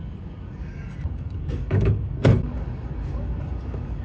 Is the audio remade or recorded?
remade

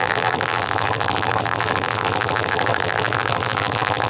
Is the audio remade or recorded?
remade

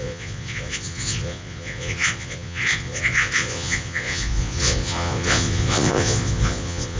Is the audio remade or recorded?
remade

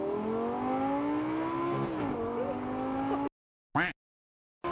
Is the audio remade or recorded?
recorded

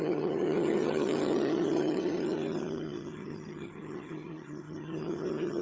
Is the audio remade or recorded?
remade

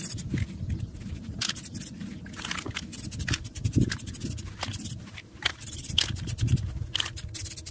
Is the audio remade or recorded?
remade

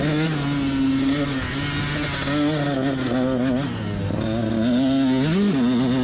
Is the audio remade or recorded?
recorded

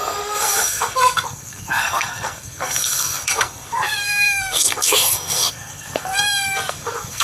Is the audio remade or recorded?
remade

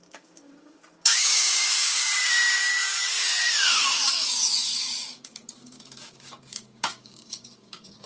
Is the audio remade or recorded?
remade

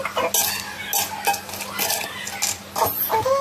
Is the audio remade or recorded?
recorded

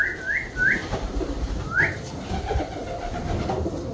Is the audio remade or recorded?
recorded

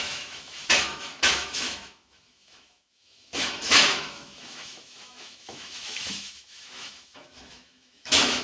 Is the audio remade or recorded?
remade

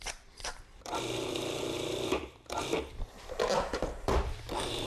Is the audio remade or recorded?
remade